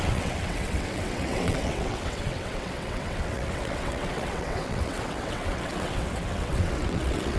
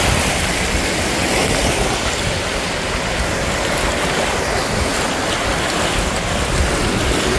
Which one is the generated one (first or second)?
first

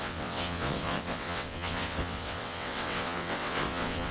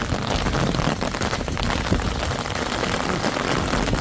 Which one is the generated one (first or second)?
first